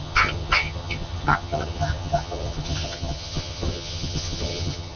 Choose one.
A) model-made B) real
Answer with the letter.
A